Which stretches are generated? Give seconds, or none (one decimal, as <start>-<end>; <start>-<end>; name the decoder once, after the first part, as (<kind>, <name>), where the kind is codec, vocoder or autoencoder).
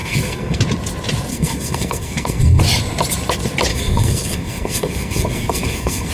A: 0.0-0.6 (codec, SNAC); 1.3-2.6; 3.7-6.1